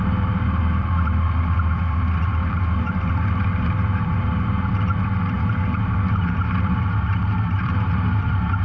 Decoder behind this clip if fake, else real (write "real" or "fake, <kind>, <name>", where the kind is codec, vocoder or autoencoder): fake, vocoder, BigVGAN v2